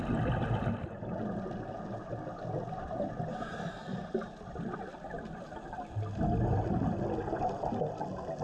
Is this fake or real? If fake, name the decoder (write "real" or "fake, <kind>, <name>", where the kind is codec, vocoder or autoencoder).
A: real